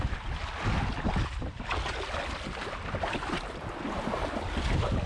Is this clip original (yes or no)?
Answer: yes